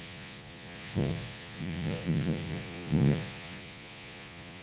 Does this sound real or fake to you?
fake